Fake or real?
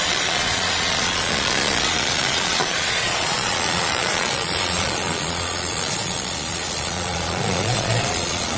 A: fake